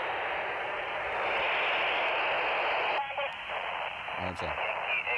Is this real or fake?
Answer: real